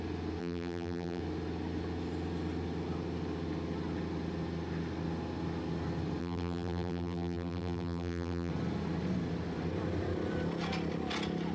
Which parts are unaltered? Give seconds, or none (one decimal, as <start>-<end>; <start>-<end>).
0.0-0.4; 1.2-6.2; 8.5-11.5